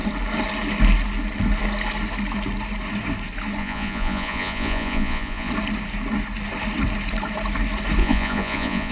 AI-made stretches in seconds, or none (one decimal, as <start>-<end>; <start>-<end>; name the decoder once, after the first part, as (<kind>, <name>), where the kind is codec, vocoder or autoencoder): 3.6-5.5 (vocoder, Vocos); 8.0-8.9